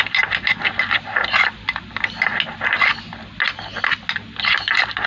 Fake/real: real